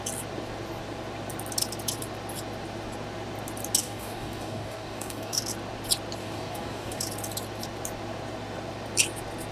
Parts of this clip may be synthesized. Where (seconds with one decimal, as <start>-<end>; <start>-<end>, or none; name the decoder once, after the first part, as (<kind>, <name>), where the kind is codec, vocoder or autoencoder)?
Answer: 3.8-5.4 (codec, DAC); 6.2-7.0